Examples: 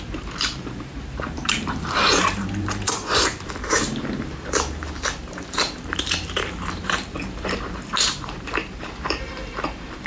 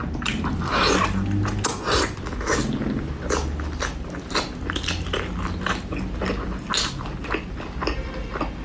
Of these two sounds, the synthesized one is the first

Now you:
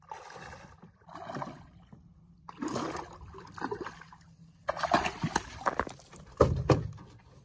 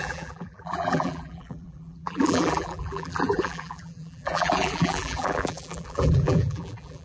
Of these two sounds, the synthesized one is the second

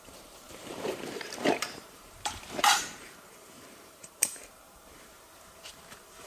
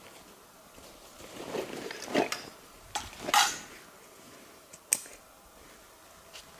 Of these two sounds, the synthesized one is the first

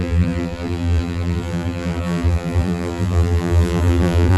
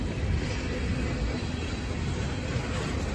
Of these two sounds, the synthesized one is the first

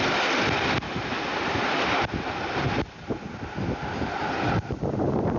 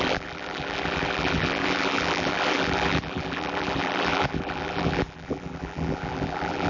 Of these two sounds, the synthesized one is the second